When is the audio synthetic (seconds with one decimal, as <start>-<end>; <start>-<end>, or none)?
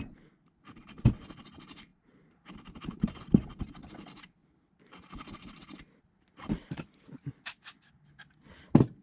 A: 1.9-3.2